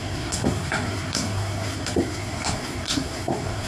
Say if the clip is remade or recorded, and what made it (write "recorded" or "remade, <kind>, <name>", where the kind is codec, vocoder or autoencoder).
remade, codec, SNAC